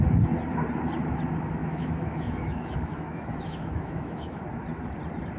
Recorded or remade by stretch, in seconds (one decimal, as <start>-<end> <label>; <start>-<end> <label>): 0.0-1.6 recorded; 1.6-4.4 remade; 4.4-5.4 recorded